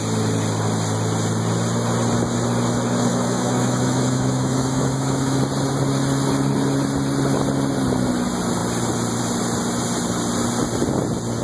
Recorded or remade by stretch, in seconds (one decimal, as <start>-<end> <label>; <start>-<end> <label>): 0.0-3.1 recorded; 3.1-5.4 remade; 5.4-11.4 recorded

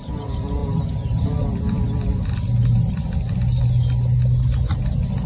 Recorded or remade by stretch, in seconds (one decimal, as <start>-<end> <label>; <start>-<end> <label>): 0.0-5.3 recorded

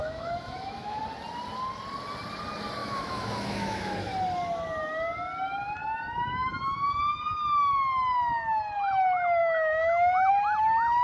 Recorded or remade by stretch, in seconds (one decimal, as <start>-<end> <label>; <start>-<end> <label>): 0.0-1.0 remade; 1.0-2.8 recorded; 2.8-4.1 remade; 4.1-5.8 recorded; 5.8-7.0 remade; 7.0-9.4 recorded; 9.4-10.3 remade; 10.3-11.0 recorded

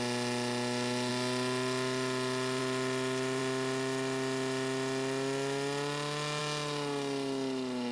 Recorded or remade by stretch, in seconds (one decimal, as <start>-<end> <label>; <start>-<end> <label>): 0.0-7.9 recorded

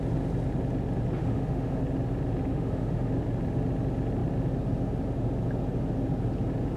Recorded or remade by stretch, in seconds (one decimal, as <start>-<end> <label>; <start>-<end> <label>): 0.0-1.2 recorded; 1.2-1.8 remade; 1.8-2.5 recorded; 2.5-3.1 remade; 3.1-6.8 recorded

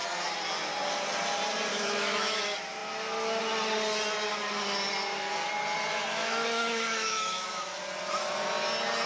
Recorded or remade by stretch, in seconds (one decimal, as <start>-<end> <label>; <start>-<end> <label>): 0.0-1.7 recorded; 1.7-2.4 remade; 2.4-6.1 recorded; 6.1-7.8 remade; 7.8-9.1 recorded

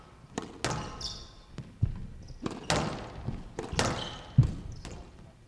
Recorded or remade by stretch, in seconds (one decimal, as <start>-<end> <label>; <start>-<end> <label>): 0.0-5.5 recorded